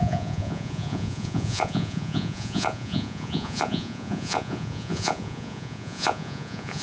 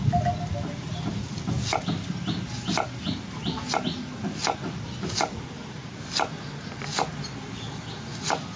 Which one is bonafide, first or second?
second